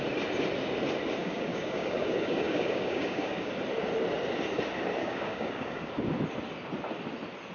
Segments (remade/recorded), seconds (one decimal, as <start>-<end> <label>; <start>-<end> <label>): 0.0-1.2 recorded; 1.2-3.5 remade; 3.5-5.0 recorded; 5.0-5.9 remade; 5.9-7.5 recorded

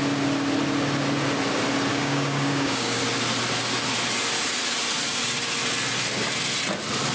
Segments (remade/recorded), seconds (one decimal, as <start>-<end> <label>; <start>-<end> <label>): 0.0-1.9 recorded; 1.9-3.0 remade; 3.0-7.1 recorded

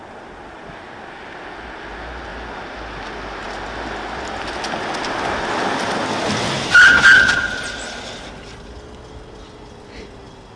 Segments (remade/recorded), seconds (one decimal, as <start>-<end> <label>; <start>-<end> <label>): 0.0-10.6 recorded

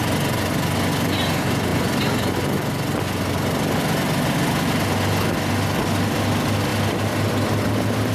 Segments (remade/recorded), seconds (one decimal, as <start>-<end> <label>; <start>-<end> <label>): 0.0-8.1 recorded

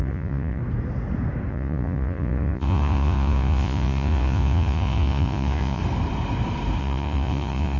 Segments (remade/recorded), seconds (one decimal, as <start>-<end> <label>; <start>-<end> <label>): 0.0-0.6 remade; 0.6-1.5 recorded; 1.5-5.8 remade; 5.8-6.8 recorded; 6.8-7.8 remade

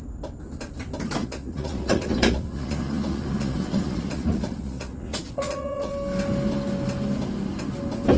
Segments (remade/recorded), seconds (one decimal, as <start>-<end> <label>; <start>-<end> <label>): 0.0-1.2 recorded; 1.2-5.9 remade; 5.9-8.2 recorded